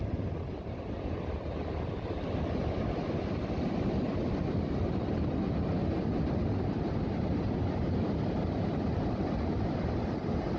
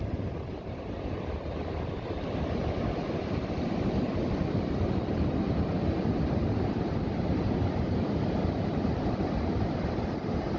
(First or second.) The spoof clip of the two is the second